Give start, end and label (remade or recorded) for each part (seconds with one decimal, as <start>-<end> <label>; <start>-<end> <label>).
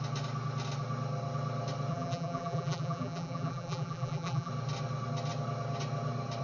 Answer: 0.0-1.9 recorded; 1.9-4.5 remade; 4.5-6.4 recorded